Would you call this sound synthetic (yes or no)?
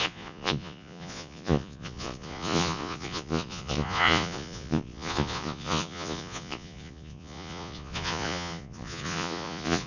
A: yes